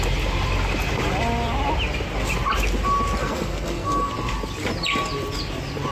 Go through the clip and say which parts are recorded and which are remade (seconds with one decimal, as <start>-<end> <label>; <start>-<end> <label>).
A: 0.0-3.2 recorded; 3.2-4.1 remade; 4.1-5.9 recorded